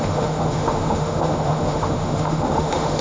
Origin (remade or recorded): remade